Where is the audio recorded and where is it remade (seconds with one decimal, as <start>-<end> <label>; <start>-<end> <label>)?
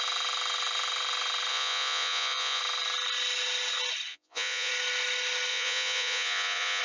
0.0-1.5 recorded; 1.5-2.6 remade; 2.6-4.1 recorded; 4.1-4.7 remade; 4.7-5.5 recorded; 5.5-6.8 remade